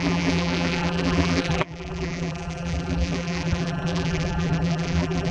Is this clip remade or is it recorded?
remade